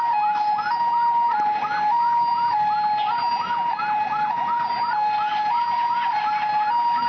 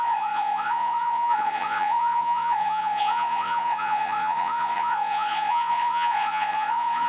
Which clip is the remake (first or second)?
second